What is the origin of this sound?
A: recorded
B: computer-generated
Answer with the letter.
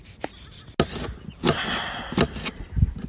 A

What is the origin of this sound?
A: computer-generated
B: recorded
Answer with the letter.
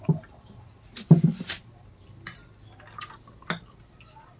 B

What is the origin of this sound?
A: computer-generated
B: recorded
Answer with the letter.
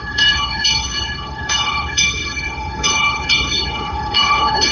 A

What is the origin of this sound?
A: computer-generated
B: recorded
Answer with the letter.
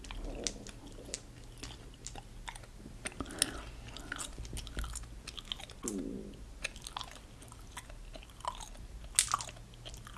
B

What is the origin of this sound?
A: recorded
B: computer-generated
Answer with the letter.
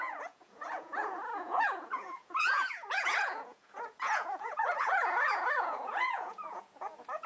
B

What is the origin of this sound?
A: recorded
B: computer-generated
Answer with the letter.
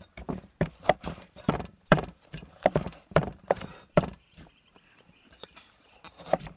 B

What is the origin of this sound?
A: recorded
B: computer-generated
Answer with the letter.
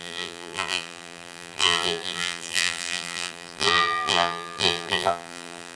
B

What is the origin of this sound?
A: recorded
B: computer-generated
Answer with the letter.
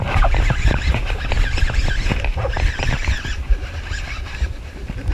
A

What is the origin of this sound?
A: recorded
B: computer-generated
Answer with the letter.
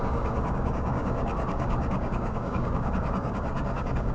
B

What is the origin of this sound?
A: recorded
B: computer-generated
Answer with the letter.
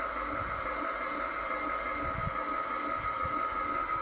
A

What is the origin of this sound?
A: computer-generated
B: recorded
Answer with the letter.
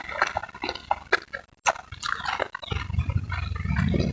B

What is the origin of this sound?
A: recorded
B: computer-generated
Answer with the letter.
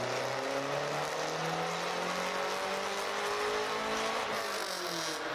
A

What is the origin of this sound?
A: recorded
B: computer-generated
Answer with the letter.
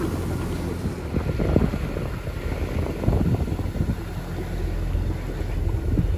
A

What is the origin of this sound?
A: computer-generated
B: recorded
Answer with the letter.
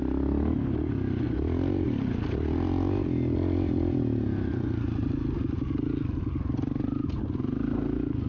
B